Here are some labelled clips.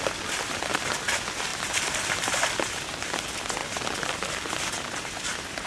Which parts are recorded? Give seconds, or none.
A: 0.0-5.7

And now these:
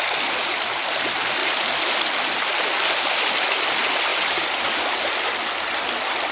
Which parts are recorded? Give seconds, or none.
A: 0.0-1.4; 2.0-6.3